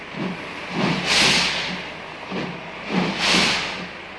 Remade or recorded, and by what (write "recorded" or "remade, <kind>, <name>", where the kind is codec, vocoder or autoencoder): recorded